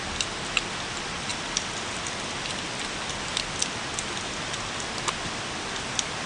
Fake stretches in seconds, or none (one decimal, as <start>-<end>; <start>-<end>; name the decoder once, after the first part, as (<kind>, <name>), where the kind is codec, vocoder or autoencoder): none